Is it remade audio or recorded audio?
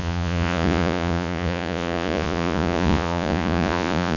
remade